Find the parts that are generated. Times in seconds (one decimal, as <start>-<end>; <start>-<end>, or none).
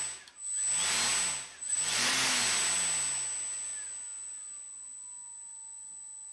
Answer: 1.5-2.1